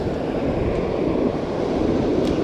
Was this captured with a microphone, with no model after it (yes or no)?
yes